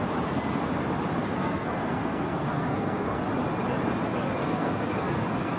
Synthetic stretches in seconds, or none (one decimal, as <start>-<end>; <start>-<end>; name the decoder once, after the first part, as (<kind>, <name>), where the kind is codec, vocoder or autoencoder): 1.2-3.2 (codec, SNAC); 4.4-5.6